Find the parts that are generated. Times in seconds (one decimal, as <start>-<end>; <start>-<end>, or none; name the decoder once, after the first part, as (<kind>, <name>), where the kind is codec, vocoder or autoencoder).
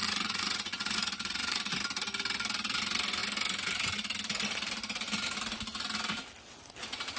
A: 0.0-1.7 (vocoder, Vocos)